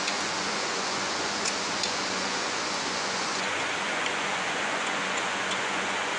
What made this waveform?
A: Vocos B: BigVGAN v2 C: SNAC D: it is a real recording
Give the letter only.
A